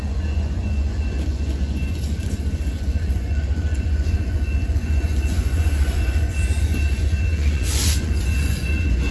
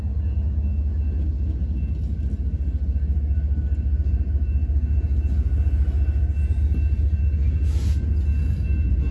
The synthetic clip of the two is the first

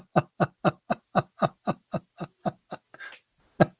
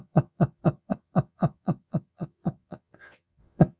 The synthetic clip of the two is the second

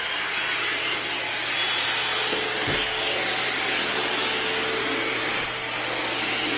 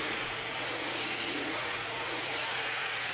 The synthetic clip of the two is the second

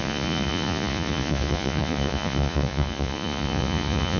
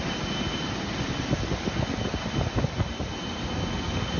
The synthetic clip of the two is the first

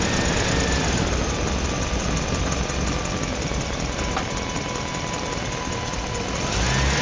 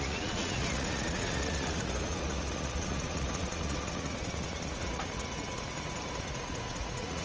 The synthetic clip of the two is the second